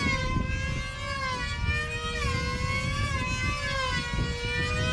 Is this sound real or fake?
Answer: real